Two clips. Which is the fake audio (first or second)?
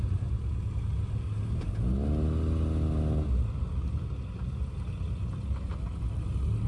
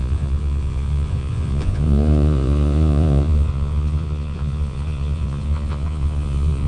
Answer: second